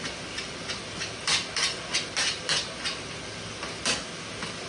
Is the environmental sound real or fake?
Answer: real